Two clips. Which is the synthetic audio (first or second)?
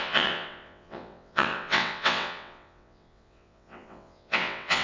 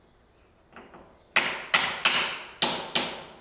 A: first